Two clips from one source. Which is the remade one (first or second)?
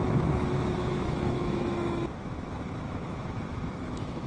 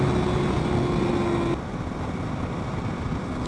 first